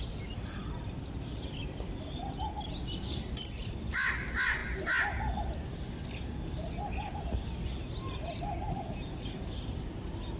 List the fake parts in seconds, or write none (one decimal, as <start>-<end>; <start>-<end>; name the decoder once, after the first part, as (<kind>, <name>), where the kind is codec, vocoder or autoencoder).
none

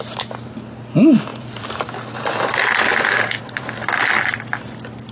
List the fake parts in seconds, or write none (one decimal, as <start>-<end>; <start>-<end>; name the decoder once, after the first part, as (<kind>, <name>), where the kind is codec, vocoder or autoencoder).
1.3-4.4 (vocoder, BigVGAN v2)

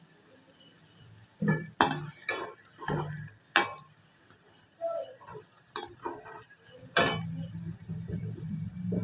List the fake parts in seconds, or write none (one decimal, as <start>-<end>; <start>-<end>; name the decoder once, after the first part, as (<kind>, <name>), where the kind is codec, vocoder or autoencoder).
0.7-2.3 (vocoder, BigVGAN v2)

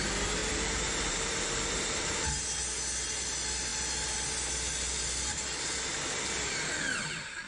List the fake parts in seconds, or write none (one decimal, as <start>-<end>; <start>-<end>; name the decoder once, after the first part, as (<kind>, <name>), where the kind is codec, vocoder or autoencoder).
0.4-2.3 (vocoder, BigVGAN v2)